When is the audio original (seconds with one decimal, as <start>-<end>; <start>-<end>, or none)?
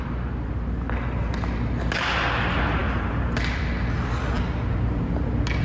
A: 0.0-5.6